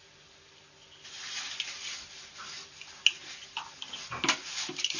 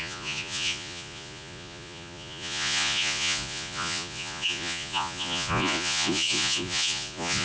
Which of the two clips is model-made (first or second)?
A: second